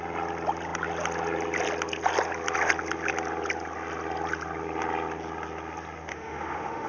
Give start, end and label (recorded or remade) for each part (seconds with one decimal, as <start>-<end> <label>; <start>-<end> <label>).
0.0-6.1 recorded; 6.1-6.9 remade